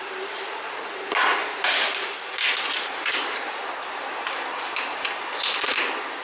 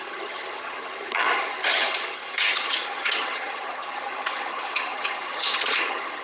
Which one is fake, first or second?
second